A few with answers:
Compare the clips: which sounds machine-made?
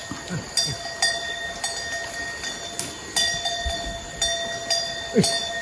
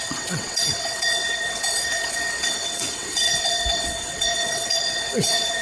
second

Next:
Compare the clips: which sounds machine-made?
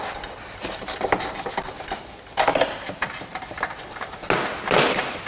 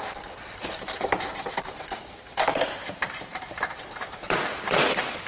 second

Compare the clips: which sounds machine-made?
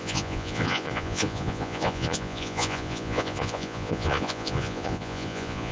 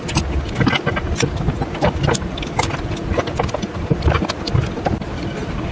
first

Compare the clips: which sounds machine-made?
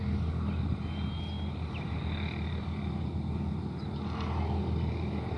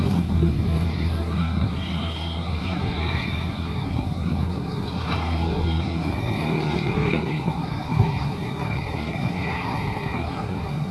second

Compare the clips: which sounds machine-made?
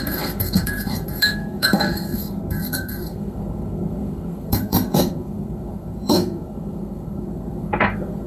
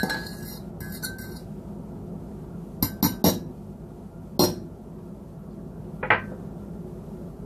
first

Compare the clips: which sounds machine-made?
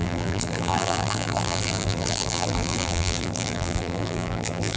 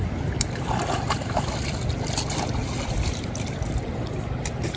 first